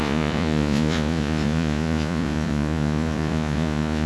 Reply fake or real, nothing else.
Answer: fake